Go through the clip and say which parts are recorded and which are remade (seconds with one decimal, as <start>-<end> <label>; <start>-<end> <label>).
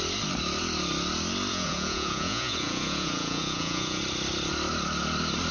0.0-1.5 recorded; 1.5-4.0 remade; 4.0-5.5 recorded